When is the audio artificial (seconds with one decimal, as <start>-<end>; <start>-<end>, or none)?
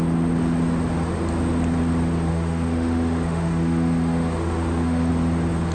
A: 2.3-5.1